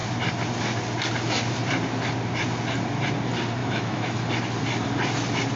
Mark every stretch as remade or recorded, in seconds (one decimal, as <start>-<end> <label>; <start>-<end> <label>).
0.0-3.6 recorded; 3.6-4.3 remade; 4.3-5.6 recorded